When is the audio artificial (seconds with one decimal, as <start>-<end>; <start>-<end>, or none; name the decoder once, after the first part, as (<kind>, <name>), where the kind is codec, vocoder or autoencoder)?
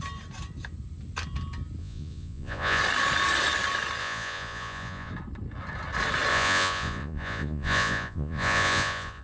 1.8-2.8 (vocoder, Vocos); 4.0-5.1; 6.3-9.2